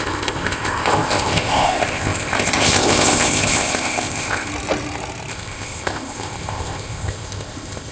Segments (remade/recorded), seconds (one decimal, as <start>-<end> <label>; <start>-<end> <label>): 0.0-4.5 remade; 4.5-5.3 recorded; 5.3-7.9 remade